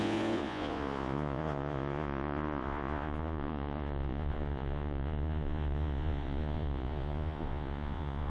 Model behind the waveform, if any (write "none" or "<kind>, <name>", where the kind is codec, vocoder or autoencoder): vocoder, Vocos